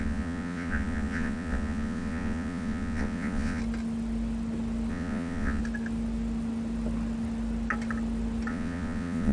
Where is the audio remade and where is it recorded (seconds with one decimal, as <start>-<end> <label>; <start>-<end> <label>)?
0.0-3.6 remade; 3.6-4.9 recorded; 4.9-5.6 remade; 5.6-8.5 recorded; 8.5-9.3 remade

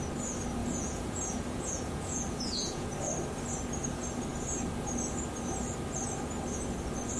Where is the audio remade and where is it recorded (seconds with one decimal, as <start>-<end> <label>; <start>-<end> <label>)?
0.0-0.6 recorded; 0.6-2.9 remade; 2.9-7.2 recorded

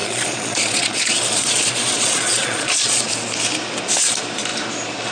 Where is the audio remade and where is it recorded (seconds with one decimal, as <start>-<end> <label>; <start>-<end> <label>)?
0.0-3.0 remade; 3.0-5.1 recorded